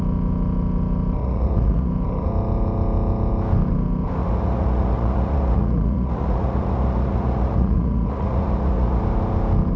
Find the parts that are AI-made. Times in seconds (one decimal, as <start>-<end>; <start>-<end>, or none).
1.2-1.9; 4.2-9.0